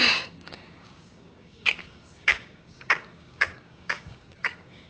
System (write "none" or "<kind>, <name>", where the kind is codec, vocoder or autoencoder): codec, DAC